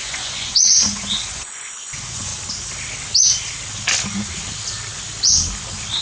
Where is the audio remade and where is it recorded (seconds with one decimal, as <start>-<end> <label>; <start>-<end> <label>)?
0.0-2.3 remade; 2.3-6.0 recorded